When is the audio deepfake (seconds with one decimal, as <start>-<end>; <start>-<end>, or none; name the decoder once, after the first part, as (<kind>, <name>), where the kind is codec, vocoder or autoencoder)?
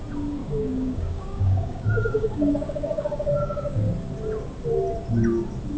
0.4-3.9 (codec, DAC)